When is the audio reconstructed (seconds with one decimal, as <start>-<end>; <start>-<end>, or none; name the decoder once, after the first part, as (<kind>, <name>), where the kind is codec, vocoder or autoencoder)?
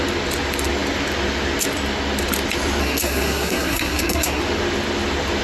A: 2.8-4.4 (codec, SNAC)